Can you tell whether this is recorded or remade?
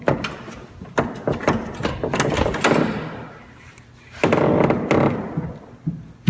recorded